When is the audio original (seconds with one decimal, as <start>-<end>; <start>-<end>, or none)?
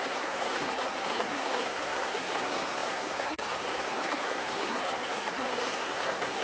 none